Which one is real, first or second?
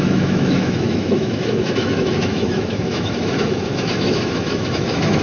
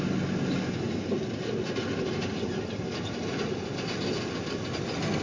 second